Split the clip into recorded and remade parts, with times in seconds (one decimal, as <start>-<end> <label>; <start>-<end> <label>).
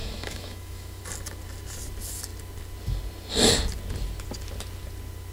0.0-1.0 remade; 1.0-5.3 recorded